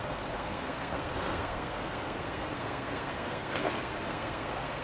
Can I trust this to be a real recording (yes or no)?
no